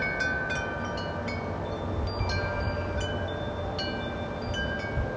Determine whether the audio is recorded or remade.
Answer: recorded